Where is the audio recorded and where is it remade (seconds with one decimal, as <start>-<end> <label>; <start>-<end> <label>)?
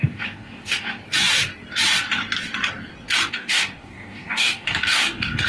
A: 0.0-1.0 remade; 1.0-3.3 recorded; 3.3-5.5 remade